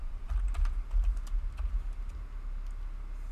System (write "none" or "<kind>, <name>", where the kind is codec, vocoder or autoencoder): none